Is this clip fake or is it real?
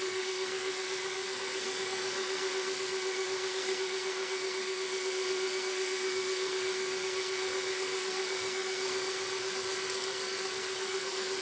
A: fake